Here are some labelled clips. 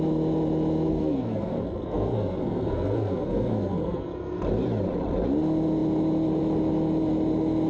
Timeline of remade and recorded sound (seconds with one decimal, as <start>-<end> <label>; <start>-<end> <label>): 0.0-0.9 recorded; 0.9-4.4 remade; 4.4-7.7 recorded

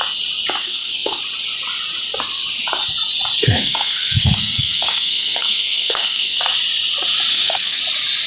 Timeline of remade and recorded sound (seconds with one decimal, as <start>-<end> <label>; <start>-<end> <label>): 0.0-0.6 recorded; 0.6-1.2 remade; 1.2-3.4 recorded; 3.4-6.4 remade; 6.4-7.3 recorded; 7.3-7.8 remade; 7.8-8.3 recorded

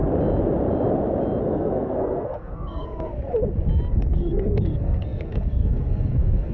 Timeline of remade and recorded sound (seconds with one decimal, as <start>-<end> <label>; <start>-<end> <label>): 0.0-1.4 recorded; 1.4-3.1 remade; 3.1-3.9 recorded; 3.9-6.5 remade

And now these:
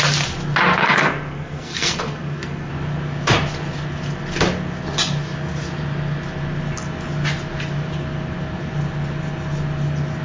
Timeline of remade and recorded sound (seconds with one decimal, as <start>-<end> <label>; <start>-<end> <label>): 0.0-0.8 recorded; 0.8-2.7 remade; 2.7-10.2 recorded

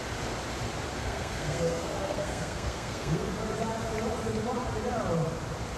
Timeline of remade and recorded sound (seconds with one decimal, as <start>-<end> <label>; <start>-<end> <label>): 0.0-1.0 recorded; 1.0-3.3 remade; 3.3-5.8 recorded

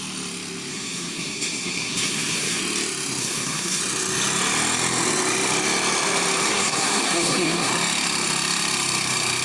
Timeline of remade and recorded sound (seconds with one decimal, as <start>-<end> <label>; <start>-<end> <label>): 0.0-0.7 recorded; 0.7-2.6 remade; 2.6-3.2 recorded; 3.2-3.8 remade; 3.8-6.5 recorded; 6.5-7.7 remade; 7.7-9.4 recorded

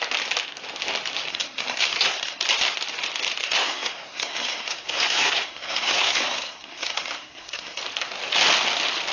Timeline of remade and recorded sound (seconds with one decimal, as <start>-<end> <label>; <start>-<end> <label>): 0.0-1.3 recorded; 1.3-2.4 remade; 2.4-3.4 recorded; 3.4-7.8 remade; 7.8-9.1 recorded

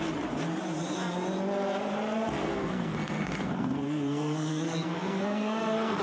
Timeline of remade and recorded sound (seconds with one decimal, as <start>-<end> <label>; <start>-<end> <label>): 0.0-2.4 recorded; 2.4-6.0 remade